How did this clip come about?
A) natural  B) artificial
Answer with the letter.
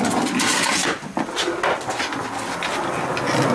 A